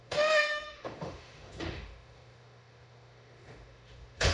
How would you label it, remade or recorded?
remade